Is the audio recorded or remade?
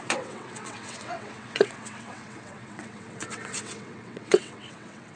remade